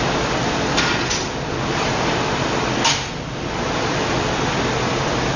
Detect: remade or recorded recorded